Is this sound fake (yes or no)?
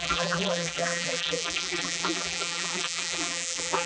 yes